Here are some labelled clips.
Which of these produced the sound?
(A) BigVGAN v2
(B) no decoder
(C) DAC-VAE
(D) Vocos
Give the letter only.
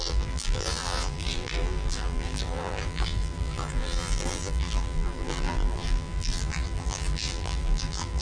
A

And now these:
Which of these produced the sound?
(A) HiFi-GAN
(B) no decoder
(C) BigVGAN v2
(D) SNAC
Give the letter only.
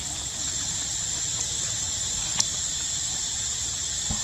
B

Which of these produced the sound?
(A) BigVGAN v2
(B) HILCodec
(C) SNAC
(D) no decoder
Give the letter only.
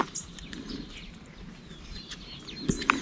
D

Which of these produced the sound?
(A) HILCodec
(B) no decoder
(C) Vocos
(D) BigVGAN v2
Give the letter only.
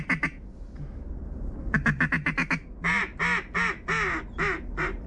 B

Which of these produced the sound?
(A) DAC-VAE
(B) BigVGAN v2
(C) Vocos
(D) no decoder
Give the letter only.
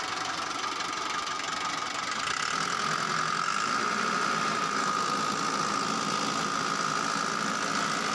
D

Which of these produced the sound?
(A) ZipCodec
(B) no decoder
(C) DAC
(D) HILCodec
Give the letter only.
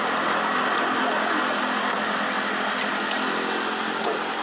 B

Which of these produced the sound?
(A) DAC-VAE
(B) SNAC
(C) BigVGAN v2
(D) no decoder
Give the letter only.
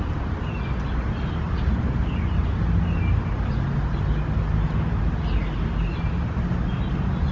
D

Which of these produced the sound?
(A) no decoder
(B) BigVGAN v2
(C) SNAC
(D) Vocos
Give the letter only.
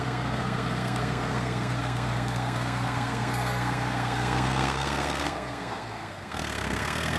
C